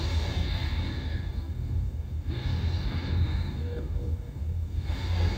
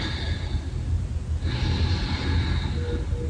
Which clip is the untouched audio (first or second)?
second